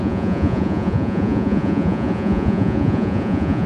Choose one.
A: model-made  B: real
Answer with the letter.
A